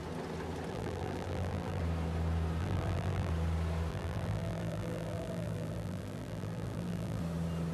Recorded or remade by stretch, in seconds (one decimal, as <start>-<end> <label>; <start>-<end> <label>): 0.0-0.7 recorded; 0.7-1.8 remade; 1.8-2.6 recorded; 2.6-3.3 remade; 3.3-3.9 recorded; 3.9-7.2 remade; 7.2-7.7 recorded